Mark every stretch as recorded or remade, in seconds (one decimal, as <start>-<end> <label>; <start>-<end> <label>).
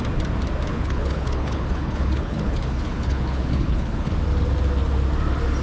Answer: 0.0-0.7 recorded; 0.7-4.1 remade; 4.1-5.6 recorded